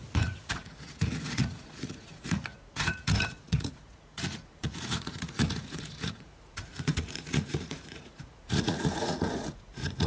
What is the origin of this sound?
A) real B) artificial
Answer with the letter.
B